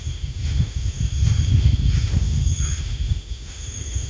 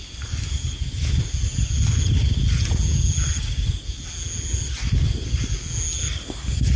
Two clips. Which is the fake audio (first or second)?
first